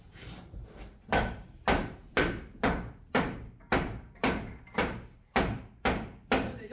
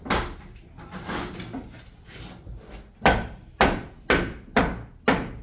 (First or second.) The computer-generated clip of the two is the first